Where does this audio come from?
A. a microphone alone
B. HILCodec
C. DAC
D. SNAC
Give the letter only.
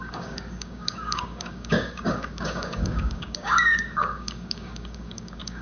C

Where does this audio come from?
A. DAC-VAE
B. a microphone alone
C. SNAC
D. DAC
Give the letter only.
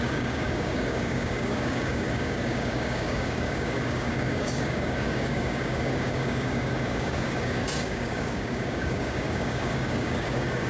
D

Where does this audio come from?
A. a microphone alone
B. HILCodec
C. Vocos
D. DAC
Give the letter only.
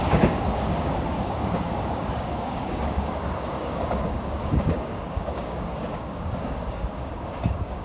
D